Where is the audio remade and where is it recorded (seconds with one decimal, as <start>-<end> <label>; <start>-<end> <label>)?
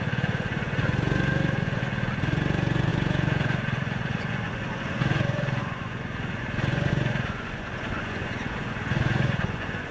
0.0-9.9 remade